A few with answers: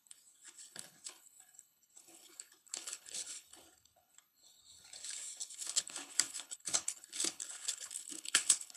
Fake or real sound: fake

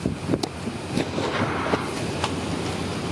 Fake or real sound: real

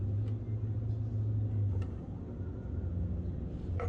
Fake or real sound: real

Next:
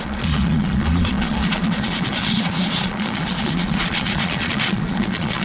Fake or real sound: fake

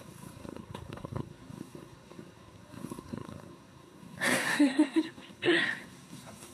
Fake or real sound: fake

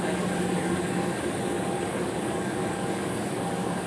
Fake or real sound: fake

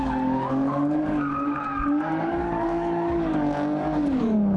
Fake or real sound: fake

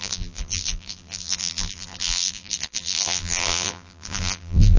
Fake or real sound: fake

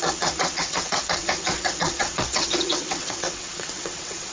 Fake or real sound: fake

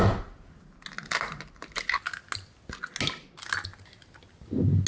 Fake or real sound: real